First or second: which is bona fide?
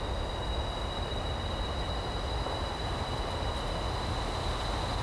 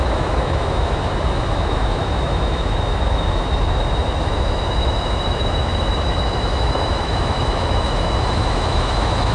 first